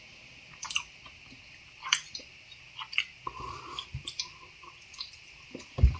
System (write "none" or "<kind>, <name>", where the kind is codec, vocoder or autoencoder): none